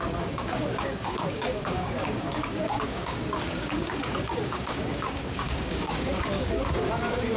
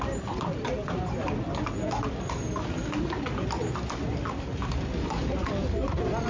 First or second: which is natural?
second